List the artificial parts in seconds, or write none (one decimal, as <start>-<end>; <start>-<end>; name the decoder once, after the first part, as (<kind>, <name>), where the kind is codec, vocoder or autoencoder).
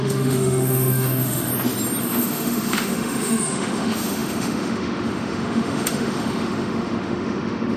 0.0-1.5 (autoencoder, DAC-VAE); 2.0-7.8